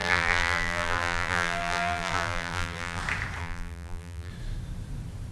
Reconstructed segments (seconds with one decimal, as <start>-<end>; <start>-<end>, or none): 0.0-3.0; 3.4-4.3